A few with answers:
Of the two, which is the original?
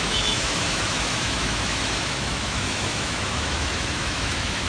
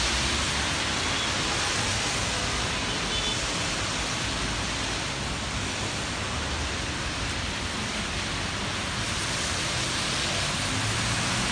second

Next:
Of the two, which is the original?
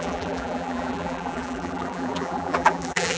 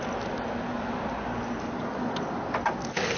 second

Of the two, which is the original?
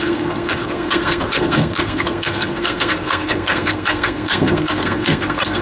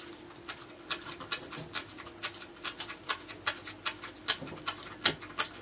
second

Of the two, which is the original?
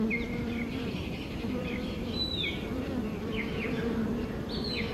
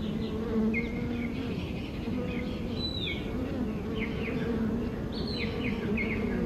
second